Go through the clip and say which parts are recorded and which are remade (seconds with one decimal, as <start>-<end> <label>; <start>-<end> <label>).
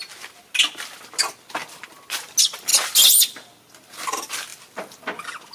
0.0-5.5 recorded